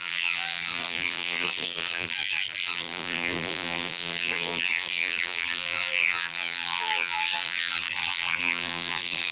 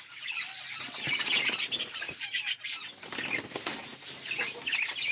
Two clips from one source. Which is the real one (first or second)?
second